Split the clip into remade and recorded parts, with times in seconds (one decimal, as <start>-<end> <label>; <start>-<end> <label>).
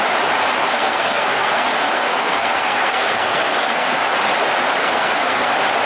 0.0-0.6 recorded; 0.6-4.0 remade; 4.0-4.8 recorded; 4.8-5.5 remade; 5.5-5.9 recorded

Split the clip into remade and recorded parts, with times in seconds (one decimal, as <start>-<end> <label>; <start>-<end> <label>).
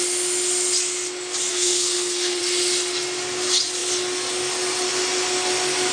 0.0-1.5 recorded; 1.5-2.4 remade; 2.4-5.9 recorded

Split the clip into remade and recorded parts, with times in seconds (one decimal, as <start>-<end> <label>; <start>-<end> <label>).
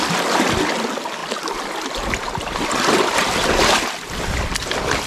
0.0-5.1 recorded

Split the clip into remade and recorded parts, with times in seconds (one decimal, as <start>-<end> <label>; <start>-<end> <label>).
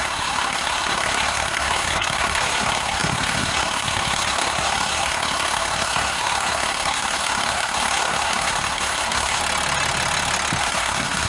0.0-9.4 remade; 9.4-10.6 recorded; 10.6-11.3 remade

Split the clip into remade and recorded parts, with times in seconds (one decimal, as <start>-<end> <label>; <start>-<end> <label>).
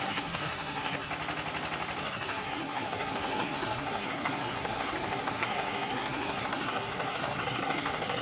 0.0-1.1 remade; 1.1-2.0 recorded; 2.0-8.2 remade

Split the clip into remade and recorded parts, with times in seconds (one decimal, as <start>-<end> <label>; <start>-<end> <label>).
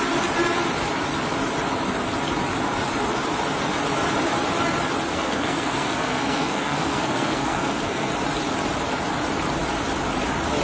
0.0-5.1 recorded; 5.1-8.1 remade; 8.1-10.6 recorded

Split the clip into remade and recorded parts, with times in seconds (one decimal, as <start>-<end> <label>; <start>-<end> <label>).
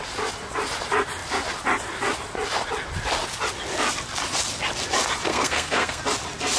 0.0-5.3 recorded; 5.3-6.0 remade; 6.0-6.6 recorded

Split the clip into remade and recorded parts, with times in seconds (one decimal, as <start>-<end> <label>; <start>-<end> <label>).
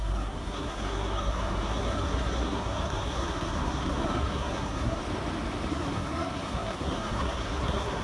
0.0-5.0 remade; 5.0-5.7 recorded; 5.7-8.0 remade